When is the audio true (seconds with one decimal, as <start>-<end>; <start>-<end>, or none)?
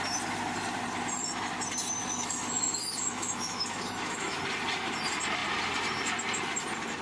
0.0-2.0; 4.4-7.0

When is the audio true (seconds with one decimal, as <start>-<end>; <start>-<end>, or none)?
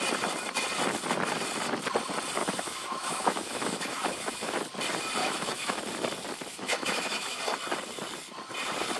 0.0-2.4; 4.6-5.2; 5.8-6.5; 7.4-9.0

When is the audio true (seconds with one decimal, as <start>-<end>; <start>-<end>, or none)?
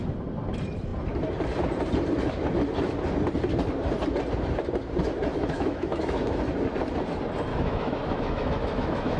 0.0-5.3; 6.4-7.5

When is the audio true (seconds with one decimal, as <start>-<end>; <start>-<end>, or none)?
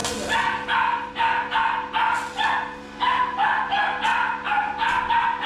0.0-5.5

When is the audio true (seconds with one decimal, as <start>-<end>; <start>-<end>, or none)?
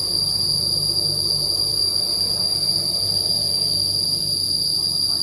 0.0-5.2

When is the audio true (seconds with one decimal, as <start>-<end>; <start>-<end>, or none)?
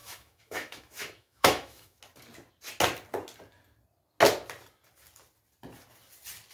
2.0-6.5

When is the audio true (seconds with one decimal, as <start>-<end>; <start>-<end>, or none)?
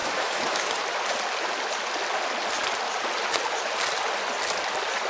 0.7-5.1